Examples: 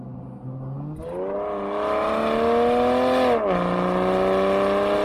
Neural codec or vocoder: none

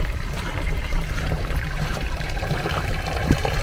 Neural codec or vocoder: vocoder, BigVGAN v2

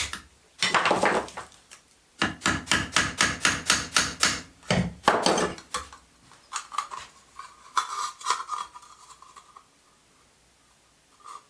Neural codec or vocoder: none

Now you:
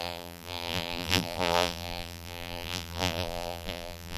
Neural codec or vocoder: vocoder, BigVGAN v2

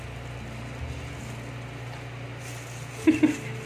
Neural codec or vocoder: none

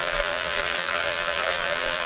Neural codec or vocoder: vocoder, BigVGAN v2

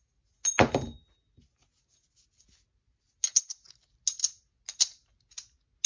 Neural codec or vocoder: none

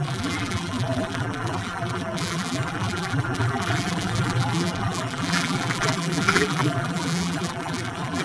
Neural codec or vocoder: vocoder, BigVGAN v2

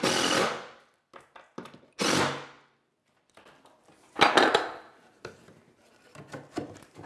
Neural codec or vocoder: none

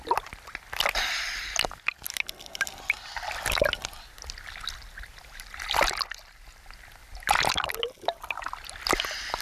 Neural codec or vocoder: none